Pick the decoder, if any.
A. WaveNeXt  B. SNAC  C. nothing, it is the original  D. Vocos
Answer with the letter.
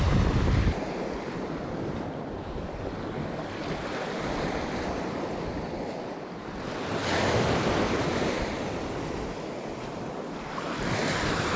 C